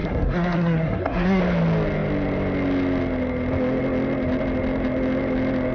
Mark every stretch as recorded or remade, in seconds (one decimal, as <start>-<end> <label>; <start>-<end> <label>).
0.0-1.4 remade; 1.4-5.7 recorded